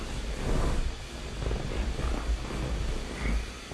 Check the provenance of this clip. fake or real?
real